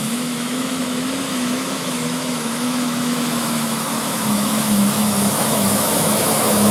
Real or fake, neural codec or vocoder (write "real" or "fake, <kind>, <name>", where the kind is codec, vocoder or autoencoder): fake, autoencoder, DAC-VAE